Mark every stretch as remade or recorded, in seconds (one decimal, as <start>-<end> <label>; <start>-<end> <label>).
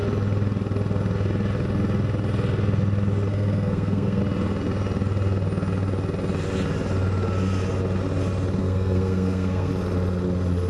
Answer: 0.0-3.3 recorded; 3.3-4.2 remade; 4.2-8.6 recorded; 8.6-9.7 remade; 9.7-10.7 recorded